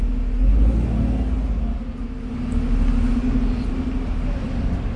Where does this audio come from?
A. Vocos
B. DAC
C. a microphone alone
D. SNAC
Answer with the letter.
C